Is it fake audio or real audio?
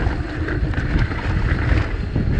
real